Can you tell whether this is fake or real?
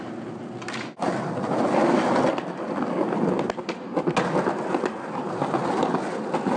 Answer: real